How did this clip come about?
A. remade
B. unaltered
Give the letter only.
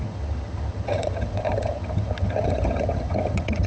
A